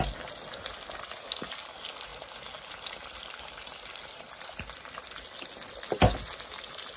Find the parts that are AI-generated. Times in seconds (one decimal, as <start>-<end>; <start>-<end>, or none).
none